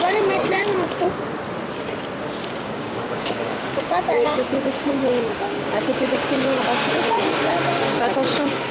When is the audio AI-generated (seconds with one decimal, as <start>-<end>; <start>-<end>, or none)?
2.4-6.6